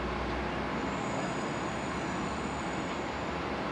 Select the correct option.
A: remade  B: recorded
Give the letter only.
B